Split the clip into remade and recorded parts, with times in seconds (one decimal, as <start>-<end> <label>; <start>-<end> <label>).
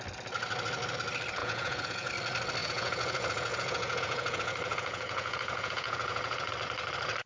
0.0-1.4 recorded; 1.4-2.1 remade; 2.1-2.6 recorded; 2.6-6.5 remade; 6.5-7.3 recorded